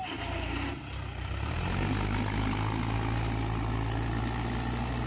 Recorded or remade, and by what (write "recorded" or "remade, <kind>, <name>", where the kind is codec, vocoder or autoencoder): recorded